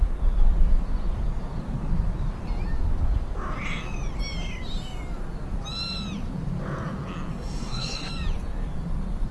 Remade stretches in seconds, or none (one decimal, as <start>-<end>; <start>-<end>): 7.3-8.1